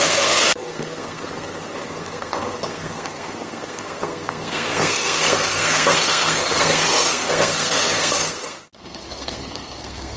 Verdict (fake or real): fake